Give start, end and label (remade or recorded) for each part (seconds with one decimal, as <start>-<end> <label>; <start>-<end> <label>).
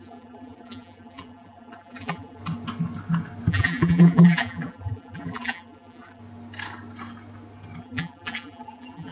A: 0.0-2.4 remade; 2.4-3.5 recorded; 3.5-6.2 remade; 6.2-7.8 recorded; 7.8-9.1 remade